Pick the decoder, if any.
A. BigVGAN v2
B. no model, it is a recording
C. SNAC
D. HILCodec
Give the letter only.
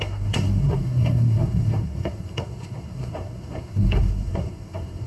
C